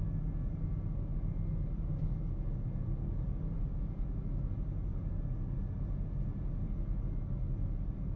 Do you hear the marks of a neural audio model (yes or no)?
no